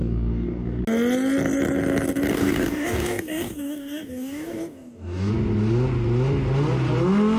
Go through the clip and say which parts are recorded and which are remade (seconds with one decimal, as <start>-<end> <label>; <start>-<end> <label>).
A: 0.0-0.8 remade; 0.8-2.3 recorded; 2.3-5.3 remade; 5.3-7.4 recorded